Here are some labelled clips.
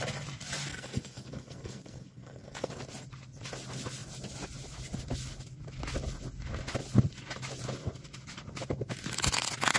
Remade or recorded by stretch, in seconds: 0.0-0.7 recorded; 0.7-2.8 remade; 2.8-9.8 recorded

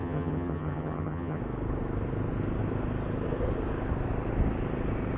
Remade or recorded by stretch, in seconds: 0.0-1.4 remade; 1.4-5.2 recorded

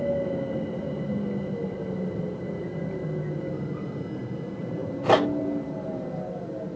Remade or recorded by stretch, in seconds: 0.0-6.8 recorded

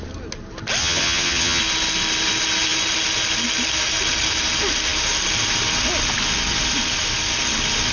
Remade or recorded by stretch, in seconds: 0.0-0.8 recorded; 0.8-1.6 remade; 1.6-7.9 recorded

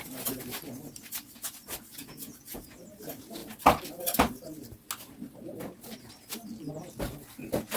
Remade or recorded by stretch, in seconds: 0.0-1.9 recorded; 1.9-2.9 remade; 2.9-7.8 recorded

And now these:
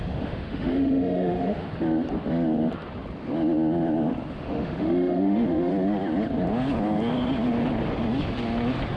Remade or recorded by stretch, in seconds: 0.0-1.7 remade; 1.7-4.4 recorded; 4.4-5.7 remade; 5.7-9.0 recorded

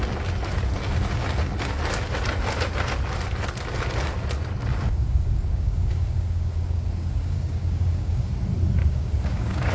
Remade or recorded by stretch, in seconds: 0.0-4.7 recorded; 4.7-8.3 remade; 8.3-8.8 recorded; 8.8-9.7 remade